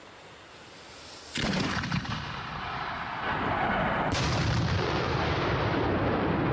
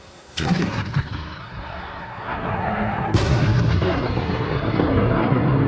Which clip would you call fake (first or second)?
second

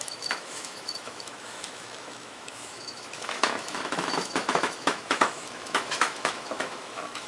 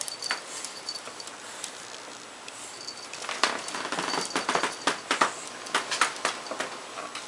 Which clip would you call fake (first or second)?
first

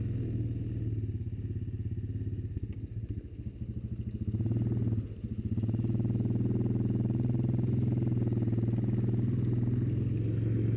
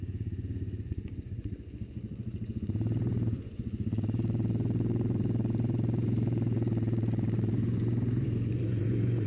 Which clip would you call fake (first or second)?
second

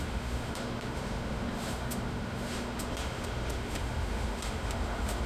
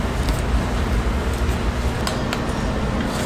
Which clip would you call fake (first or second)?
first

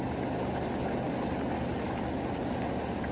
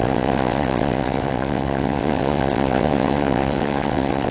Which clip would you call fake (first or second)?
second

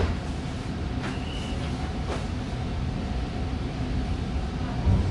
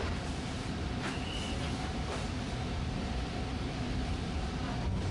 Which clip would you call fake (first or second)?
second